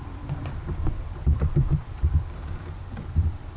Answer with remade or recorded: remade